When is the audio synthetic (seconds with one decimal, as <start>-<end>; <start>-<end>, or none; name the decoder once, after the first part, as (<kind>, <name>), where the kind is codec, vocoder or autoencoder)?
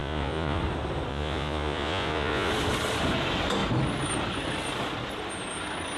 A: 0.0-0.6 (vocoder, Vocos); 1.1-2.5